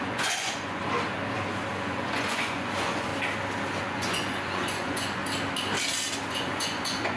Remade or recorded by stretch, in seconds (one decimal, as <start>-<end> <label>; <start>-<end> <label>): 0.0-0.8 remade; 0.8-1.7 recorded; 1.7-3.1 remade; 3.1-3.8 recorded; 3.8-5.2 remade; 5.2-6.3 recorded; 6.3-7.2 remade